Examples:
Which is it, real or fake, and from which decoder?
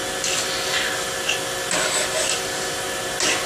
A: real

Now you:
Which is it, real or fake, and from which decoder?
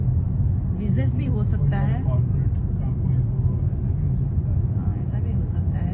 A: real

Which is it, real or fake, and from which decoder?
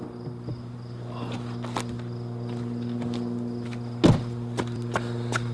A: real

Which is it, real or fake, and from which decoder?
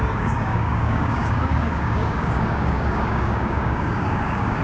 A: fake, codec, DAC